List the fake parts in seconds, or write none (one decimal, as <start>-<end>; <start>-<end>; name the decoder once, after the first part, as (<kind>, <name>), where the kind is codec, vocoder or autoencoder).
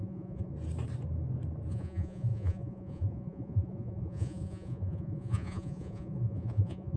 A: 0.0-0.5 (vocoder, Vocos); 1.7-7.0